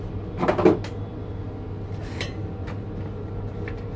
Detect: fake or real real